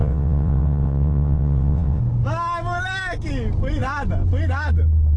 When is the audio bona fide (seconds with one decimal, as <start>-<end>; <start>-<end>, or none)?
2.0-5.2